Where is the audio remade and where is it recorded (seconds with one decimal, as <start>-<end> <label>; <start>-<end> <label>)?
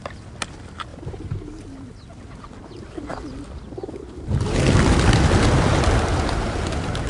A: 0.0-7.1 recorded